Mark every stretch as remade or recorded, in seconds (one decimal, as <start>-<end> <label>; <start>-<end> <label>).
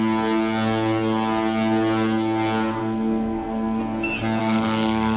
0.0-2.8 recorded; 2.8-3.8 remade; 3.8-4.4 recorded; 4.4-5.2 remade